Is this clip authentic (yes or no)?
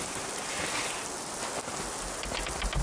yes